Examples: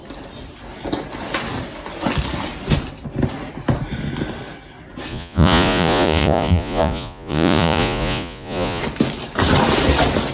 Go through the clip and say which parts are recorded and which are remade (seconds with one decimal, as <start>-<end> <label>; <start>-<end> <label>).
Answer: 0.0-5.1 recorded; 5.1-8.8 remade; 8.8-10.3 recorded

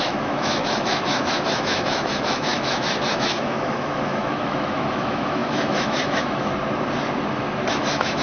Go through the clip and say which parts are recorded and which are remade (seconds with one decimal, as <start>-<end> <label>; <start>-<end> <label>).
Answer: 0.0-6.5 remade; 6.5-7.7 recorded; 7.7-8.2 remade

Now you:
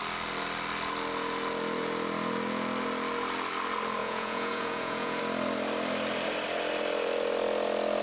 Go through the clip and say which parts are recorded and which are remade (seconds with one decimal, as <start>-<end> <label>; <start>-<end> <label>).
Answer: 0.0-4.0 recorded; 4.0-5.2 remade; 5.2-8.0 recorded

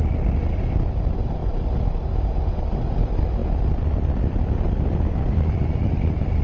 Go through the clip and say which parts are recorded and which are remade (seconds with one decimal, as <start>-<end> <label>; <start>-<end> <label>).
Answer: 0.0-6.4 recorded